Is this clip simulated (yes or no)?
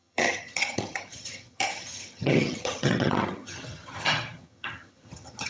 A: yes